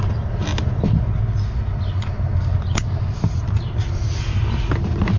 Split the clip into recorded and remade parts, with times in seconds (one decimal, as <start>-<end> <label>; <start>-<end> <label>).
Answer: 0.0-5.2 recorded